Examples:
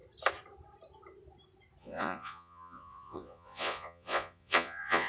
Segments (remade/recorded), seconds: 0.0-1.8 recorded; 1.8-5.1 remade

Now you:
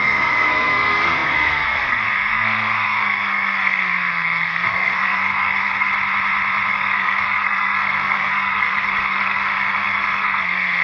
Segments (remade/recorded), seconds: 0.0-5.9 remade; 5.9-6.7 recorded; 6.7-10.8 remade